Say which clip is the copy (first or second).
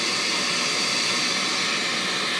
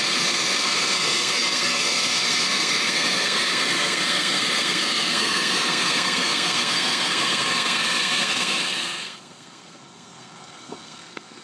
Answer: second